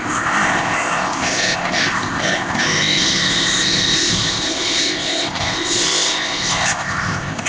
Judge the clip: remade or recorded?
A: remade